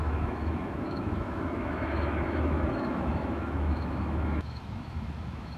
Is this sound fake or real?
fake